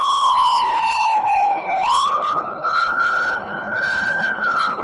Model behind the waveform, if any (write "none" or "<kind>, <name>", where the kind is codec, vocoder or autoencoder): codec, HILCodec